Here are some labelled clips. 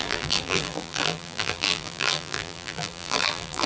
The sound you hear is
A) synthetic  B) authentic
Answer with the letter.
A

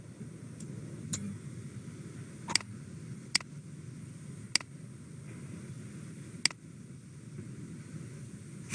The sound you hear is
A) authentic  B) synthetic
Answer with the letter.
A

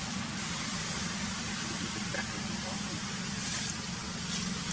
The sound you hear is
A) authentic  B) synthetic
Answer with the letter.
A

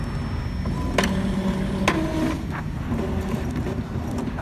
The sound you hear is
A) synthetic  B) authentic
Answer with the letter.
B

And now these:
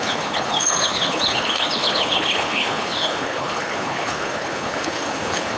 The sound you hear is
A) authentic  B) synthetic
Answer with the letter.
B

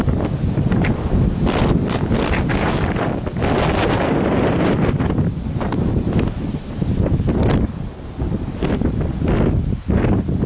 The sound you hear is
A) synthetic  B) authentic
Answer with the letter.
B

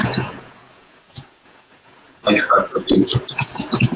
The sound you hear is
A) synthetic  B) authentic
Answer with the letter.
A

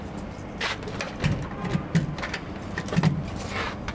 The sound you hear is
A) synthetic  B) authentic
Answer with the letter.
B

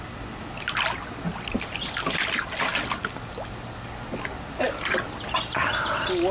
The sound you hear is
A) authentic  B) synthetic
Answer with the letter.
A